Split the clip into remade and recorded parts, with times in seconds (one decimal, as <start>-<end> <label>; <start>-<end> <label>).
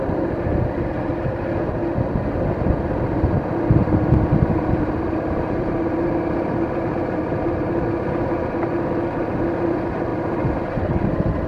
0.0-1.1 remade; 1.1-2.8 recorded; 2.8-10.1 remade; 10.1-11.1 recorded; 11.1-11.5 remade